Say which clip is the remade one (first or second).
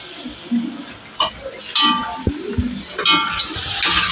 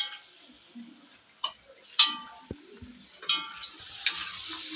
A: second